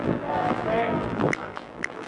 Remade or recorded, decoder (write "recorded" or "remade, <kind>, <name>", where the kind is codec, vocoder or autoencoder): remade, vocoder, BigVGAN v2